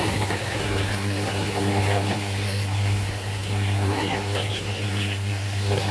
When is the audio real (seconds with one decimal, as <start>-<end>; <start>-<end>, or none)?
none

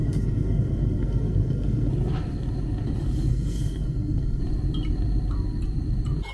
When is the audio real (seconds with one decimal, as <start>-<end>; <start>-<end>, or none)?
1.9-3.3; 4.4-6.3

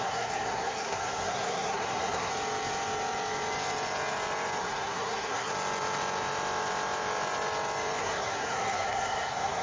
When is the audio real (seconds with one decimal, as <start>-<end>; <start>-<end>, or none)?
2.3-4.6; 5.5-8.0

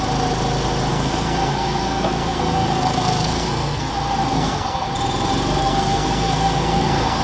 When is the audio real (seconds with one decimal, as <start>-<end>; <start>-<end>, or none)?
0.0-0.9; 3.9-4.3; 4.9-5.6

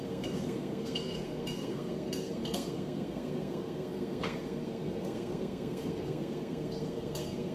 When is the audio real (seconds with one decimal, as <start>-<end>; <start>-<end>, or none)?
none

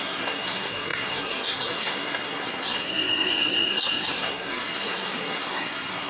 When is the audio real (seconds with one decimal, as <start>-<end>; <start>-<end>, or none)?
none

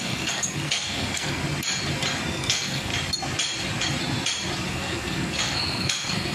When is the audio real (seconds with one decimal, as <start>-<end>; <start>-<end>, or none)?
1.4-2.3; 2.9-4.7

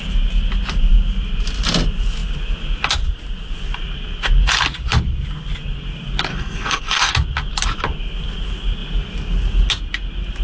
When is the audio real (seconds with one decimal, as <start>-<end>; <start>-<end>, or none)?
0.0-6.3; 7.1-10.4